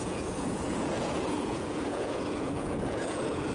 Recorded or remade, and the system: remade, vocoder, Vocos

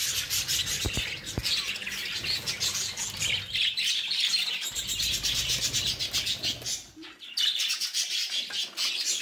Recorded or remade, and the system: recorded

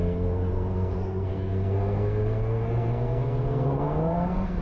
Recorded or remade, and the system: remade, codec, SNAC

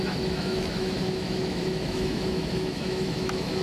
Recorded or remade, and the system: remade, autoencoder, DAC-VAE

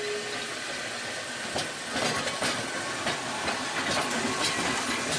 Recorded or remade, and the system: recorded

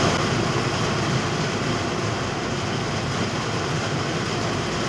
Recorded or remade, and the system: recorded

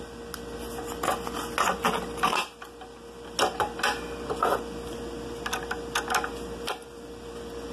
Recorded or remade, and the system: recorded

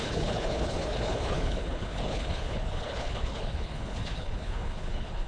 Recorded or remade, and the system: remade, codec, HILCodec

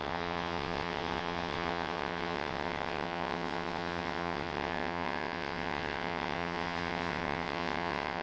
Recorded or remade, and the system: remade, vocoder, WaveNeXt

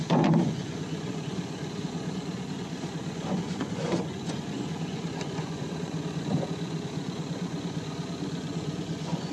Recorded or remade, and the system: remade, vocoder, Vocos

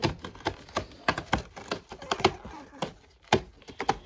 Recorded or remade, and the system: recorded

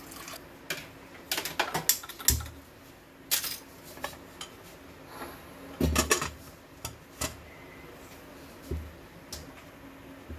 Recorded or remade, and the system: recorded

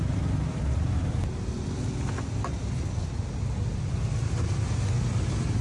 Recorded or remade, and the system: recorded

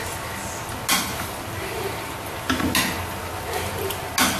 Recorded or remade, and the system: recorded